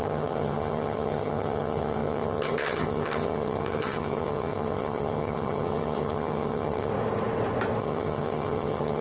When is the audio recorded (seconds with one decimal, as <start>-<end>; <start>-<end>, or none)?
6.9-7.8